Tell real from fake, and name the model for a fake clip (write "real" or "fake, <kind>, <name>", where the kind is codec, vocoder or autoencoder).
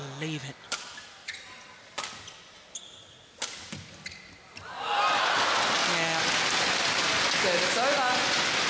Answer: real